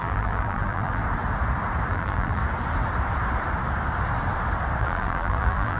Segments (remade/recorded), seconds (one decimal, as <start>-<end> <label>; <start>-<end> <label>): 0.0-1.0 remade; 1.0-1.9 recorded; 1.9-2.4 remade; 2.4-4.8 recorded; 4.8-5.8 remade